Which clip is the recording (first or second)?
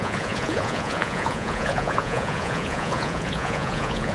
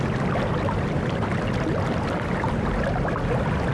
second